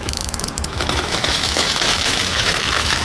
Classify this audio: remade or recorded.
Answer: remade